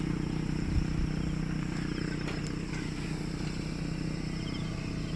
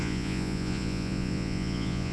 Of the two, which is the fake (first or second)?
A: second